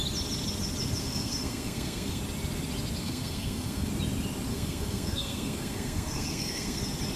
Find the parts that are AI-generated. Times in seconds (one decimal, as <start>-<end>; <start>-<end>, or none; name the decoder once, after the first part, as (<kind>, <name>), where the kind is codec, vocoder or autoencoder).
1.0-2.2 (codec, SNAC); 3.0-3.9; 4.5-6.8